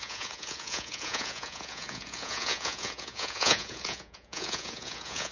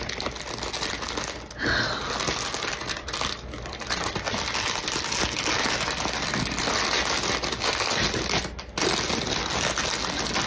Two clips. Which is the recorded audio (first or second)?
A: second